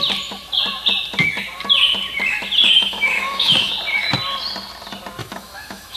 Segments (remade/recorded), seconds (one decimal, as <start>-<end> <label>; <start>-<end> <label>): 0.0-2.8 recorded; 2.8-3.7 remade; 3.7-5.2 recorded; 5.2-6.0 remade